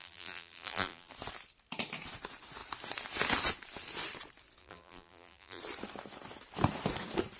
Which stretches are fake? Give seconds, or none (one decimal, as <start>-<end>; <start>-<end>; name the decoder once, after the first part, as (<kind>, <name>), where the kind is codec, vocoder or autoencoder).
0.0-1.1 (vocoder, BigVGAN v2); 4.6-5.6